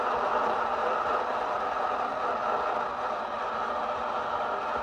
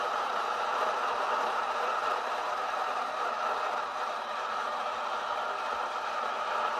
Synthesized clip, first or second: second